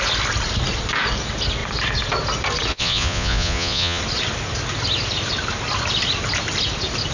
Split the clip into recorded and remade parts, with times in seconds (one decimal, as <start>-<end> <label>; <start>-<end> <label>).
0.0-2.7 recorded; 2.7-4.0 remade; 4.0-7.1 recorded